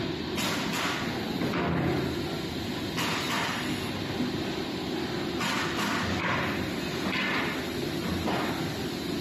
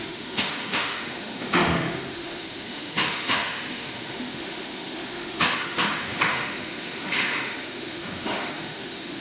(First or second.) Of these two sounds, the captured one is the first